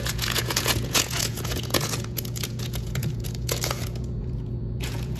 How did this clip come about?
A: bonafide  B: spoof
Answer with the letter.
B